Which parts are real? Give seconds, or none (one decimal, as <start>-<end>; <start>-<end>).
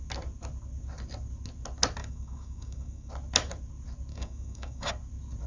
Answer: 0.0-2.0; 3.1-4.1; 4.9-5.5